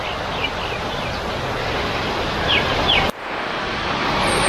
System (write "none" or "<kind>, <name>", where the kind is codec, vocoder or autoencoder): none